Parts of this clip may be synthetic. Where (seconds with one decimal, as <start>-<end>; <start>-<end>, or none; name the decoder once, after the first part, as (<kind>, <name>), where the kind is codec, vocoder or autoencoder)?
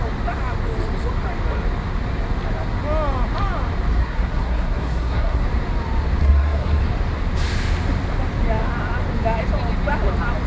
4.0-5.4 (codec, SNAC); 6.2-6.8